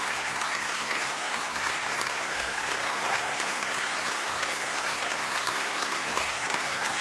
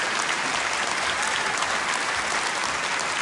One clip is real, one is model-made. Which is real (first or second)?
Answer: second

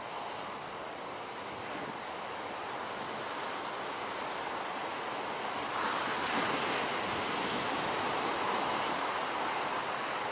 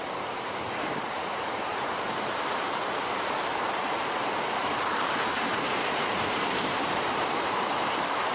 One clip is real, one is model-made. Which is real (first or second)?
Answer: first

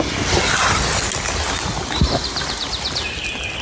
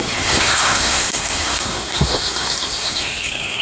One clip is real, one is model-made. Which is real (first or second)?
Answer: first